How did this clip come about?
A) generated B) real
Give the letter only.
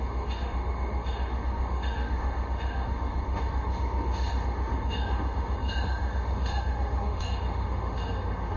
A